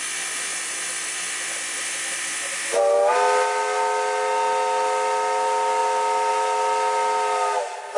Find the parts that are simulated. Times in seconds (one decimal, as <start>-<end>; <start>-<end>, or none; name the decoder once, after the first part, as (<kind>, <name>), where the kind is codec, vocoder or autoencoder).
none